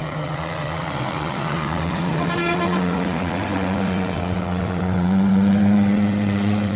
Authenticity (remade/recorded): remade